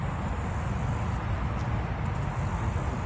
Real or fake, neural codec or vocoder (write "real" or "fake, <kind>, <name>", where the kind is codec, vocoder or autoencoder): real